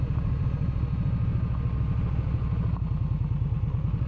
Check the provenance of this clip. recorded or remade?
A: recorded